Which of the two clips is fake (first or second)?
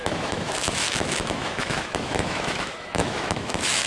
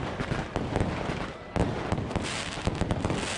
first